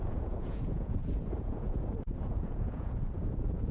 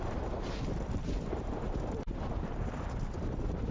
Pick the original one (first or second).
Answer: second